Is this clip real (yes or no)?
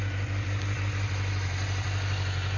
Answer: yes